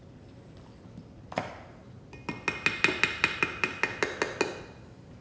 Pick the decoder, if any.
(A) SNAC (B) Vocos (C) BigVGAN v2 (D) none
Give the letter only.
D